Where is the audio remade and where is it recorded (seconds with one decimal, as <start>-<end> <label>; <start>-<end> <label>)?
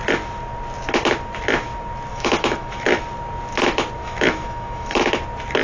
0.0-2.1 recorded; 2.1-3.0 remade; 3.0-4.0 recorded; 4.0-5.1 remade; 5.1-5.6 recorded